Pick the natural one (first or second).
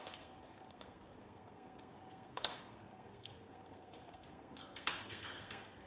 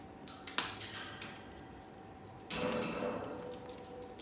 second